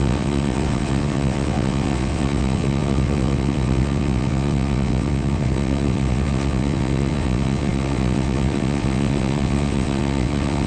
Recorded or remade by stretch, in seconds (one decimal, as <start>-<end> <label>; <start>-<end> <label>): 0.0-10.7 remade